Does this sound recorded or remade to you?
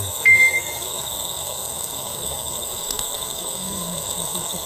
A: remade